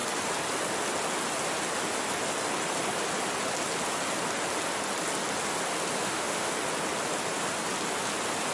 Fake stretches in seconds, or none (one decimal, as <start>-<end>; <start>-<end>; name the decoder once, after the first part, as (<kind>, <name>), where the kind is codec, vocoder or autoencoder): 6.0-6.5 (autoencoder, DAC-VAE)